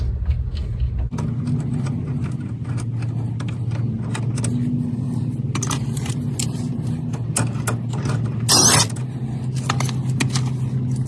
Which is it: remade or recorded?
recorded